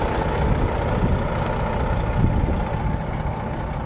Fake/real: real